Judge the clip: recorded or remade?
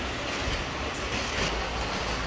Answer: recorded